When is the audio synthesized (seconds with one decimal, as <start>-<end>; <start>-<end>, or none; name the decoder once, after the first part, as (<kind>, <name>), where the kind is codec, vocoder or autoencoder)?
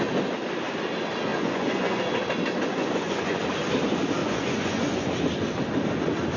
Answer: 1.3-2.0 (vocoder, Vocos); 2.8-3.4; 4.2-5.1